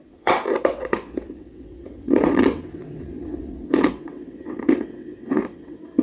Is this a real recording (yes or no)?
no